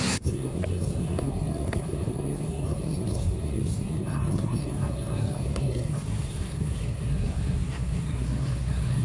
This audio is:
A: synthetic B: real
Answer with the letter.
A